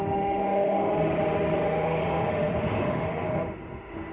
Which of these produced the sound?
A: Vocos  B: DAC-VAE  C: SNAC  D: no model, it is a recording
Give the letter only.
B